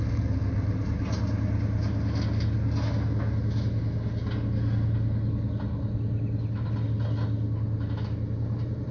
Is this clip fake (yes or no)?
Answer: no